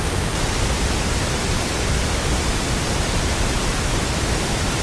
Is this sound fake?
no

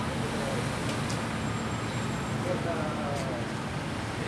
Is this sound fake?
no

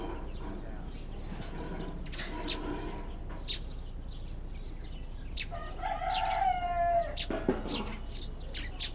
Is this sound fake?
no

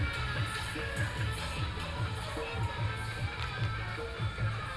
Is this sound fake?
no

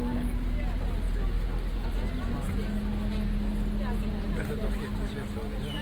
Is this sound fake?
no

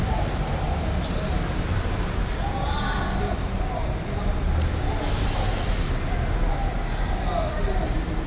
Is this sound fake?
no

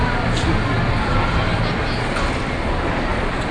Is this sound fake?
no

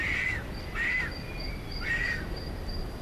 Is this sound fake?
no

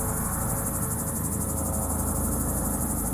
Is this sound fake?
no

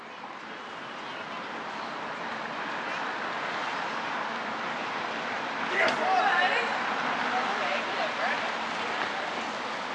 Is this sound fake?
no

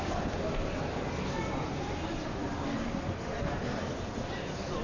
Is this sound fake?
no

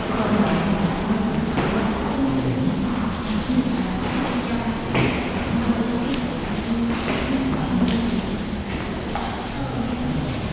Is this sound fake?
no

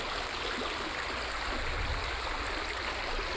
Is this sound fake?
no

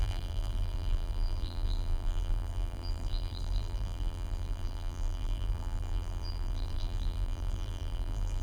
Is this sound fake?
yes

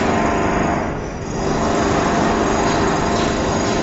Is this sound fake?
no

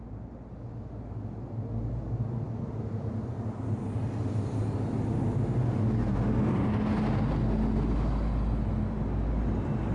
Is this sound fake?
no